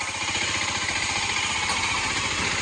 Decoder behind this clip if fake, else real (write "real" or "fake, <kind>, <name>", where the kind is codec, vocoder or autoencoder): real